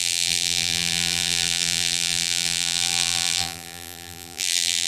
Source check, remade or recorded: remade